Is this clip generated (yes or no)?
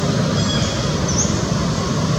no